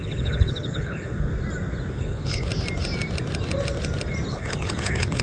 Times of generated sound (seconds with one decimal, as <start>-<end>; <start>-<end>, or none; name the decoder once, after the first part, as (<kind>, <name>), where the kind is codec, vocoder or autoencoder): 0.0-1.3 (codec, HILCodec); 1.9-2.5; 4.3-5.2